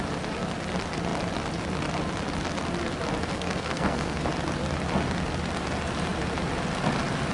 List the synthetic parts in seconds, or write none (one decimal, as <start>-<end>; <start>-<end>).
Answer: 3.3-4.3